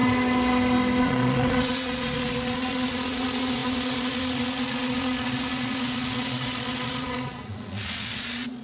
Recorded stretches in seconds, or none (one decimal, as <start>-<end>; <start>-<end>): 0.0-1.0